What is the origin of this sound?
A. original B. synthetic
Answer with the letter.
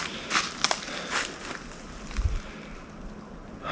A